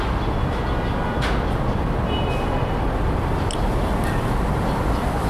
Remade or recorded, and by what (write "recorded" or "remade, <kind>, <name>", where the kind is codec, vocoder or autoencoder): recorded